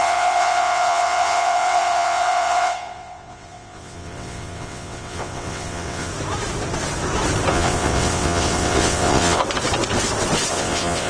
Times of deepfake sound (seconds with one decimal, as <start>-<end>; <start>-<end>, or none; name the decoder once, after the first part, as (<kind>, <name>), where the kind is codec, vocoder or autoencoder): 0.0-6.1 (vocoder, WaveNeXt); 7.5-9.4; 10.5-11.1